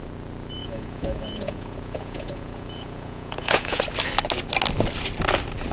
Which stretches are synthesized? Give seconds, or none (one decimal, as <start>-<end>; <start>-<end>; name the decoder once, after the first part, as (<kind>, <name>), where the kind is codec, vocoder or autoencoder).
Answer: 0.6-3.8 (vocoder, Vocos)